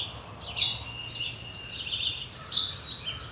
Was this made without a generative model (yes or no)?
yes